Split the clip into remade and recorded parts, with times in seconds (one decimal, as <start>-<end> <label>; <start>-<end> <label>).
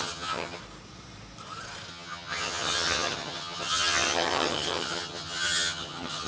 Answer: 0.0-0.6 remade; 0.6-1.9 recorded; 1.9-6.3 remade